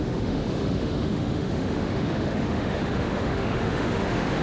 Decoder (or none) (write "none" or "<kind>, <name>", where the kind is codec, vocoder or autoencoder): autoencoder, DAC-VAE